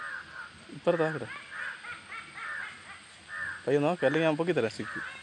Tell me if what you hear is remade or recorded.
recorded